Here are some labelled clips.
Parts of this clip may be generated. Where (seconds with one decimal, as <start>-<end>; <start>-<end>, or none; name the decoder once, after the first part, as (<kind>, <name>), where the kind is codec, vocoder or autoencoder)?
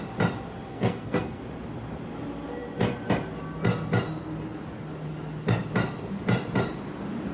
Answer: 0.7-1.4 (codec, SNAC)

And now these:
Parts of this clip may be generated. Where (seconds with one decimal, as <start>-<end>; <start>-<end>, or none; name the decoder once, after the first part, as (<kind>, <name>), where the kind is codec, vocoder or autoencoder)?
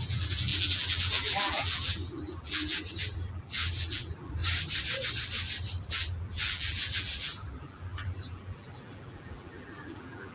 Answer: 0.0-4.4 (vocoder, BigVGAN v2); 5.9-10.3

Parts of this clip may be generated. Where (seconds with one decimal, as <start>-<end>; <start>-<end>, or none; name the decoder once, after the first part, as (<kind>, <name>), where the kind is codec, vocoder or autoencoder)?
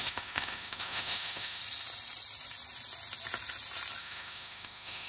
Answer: 0.0-1.6 (autoencoder, DAC-VAE); 4.0-5.1